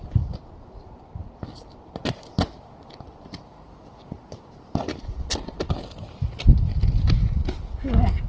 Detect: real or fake real